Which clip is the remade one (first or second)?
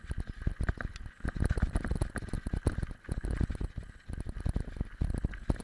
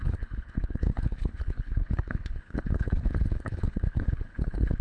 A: second